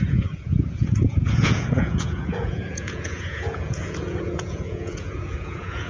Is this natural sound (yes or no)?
no